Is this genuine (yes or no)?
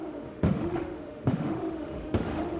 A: no